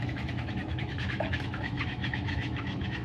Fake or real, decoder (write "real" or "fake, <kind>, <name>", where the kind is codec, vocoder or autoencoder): fake, autoencoder, DAC-VAE